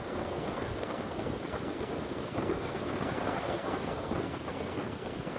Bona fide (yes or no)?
no